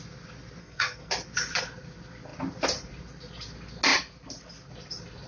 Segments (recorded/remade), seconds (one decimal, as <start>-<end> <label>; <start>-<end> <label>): 0.0-0.6 recorded; 0.6-1.1 remade; 1.1-5.3 recorded